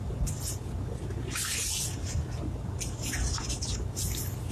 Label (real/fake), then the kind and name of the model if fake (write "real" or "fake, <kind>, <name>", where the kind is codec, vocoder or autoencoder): real